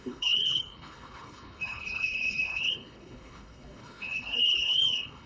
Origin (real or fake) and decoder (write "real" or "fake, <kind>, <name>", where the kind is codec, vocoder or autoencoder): fake, codec, HILCodec